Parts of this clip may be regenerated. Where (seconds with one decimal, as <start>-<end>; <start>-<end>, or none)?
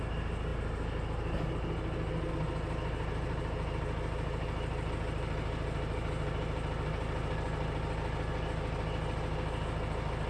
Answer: none